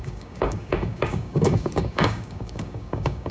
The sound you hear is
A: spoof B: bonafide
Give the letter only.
A